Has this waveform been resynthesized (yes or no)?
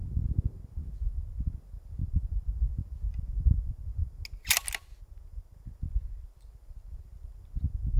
no